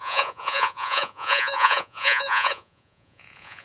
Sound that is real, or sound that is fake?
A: fake